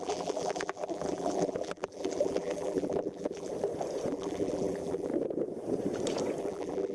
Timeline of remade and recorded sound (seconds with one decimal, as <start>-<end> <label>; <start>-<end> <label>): 0.0-3.5 remade; 3.5-4.1 recorded; 4.1-5.1 remade; 5.1-6.4 recorded; 6.4-6.9 remade